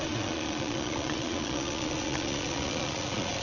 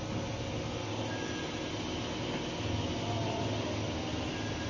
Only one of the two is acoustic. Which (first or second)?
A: second